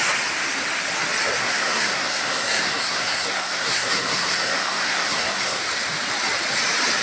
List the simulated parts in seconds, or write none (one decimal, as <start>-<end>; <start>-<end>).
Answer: 1.4-5.6